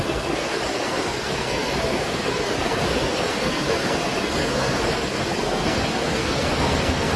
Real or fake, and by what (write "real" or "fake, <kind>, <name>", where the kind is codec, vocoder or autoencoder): fake, codec, SNAC